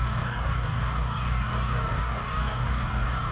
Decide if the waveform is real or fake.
fake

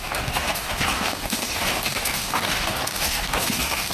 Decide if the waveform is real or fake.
fake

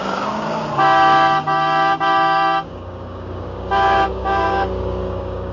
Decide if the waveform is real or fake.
fake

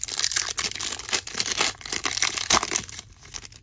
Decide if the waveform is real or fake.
real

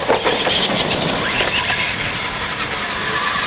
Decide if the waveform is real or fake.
real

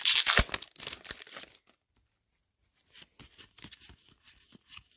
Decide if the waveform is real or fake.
real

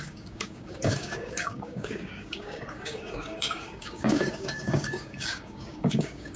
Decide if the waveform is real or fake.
fake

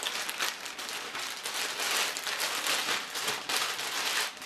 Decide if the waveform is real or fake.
real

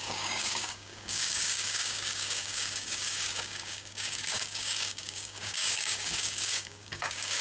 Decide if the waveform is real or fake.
fake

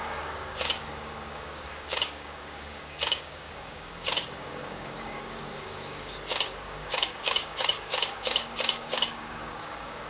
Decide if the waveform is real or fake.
fake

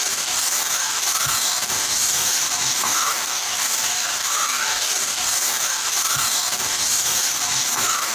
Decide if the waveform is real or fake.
fake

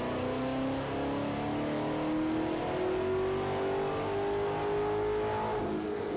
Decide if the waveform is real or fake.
real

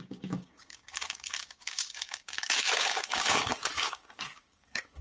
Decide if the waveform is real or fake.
fake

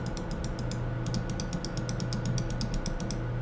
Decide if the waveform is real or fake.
real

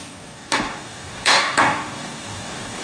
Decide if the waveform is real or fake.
fake